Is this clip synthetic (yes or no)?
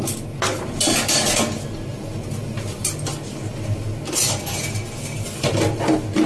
no